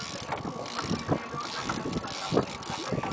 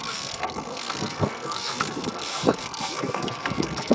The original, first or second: first